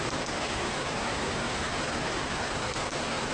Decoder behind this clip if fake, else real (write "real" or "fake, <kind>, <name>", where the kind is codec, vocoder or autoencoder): fake, codec, SNAC